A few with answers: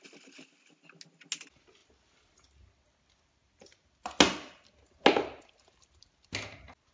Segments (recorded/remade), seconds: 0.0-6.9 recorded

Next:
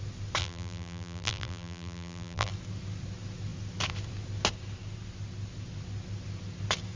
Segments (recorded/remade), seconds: 0.0-0.4 recorded; 0.4-2.5 remade; 2.5-7.0 recorded